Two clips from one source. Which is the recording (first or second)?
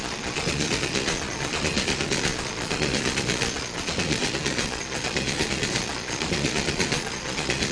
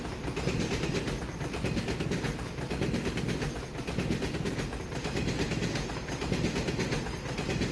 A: second